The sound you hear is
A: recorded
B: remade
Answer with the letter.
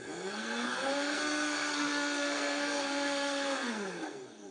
B